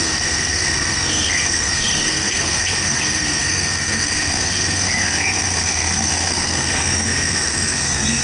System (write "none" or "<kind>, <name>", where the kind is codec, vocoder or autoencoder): codec, SNAC